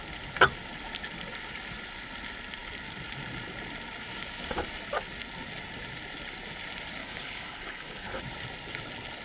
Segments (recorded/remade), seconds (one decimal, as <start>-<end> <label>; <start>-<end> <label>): 0.0-7.0 recorded; 7.0-8.2 remade; 8.2-9.2 recorded